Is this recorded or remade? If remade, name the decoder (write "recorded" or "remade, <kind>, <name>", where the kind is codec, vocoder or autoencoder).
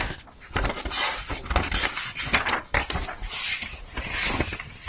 recorded